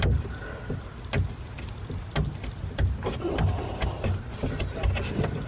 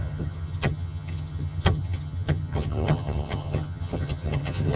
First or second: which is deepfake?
second